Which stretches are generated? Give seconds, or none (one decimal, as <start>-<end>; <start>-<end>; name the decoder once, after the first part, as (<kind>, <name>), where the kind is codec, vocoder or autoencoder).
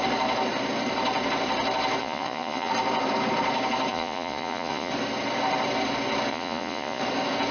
2.0-2.7 (vocoder, Vocos); 3.9-4.9; 6.3-7.0